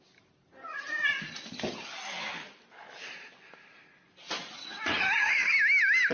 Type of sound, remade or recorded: recorded